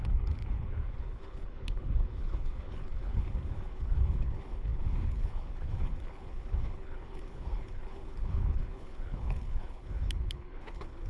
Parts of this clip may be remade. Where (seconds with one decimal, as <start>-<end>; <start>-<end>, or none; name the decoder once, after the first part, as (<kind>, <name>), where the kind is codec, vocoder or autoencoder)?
0.0-11.1 (codec, HILCodec)